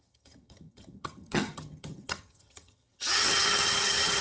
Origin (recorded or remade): remade